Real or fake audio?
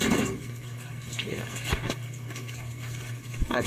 fake